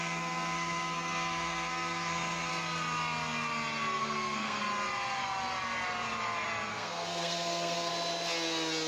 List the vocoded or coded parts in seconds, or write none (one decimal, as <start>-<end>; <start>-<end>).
0.0-2.5; 4.0-4.6; 6.7-7.9